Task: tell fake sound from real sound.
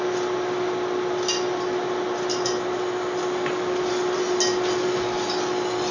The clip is real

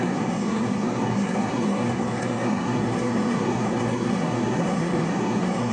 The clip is fake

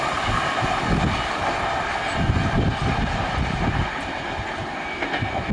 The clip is real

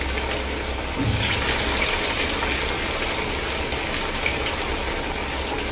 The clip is real